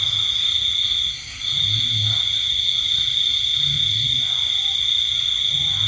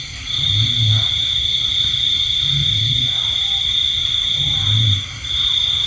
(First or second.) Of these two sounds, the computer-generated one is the second